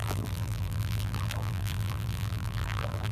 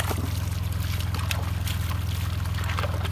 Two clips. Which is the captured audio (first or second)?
second